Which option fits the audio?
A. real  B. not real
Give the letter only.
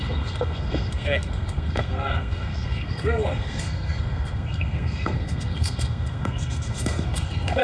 B